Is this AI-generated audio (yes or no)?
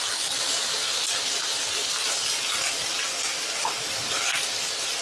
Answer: no